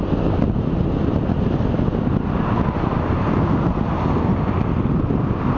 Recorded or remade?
recorded